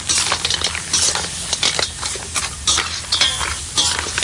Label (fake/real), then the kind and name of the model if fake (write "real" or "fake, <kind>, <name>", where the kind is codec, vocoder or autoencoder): real